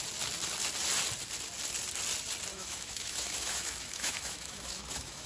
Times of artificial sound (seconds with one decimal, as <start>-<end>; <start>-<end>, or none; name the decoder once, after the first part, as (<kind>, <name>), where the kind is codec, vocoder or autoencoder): 2.5-5.3 (autoencoder, DAC-VAE)